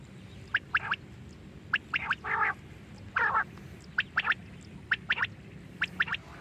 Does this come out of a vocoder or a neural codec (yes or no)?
no